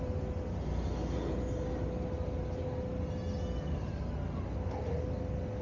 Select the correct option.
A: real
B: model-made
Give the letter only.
A